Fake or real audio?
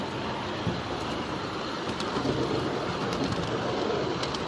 real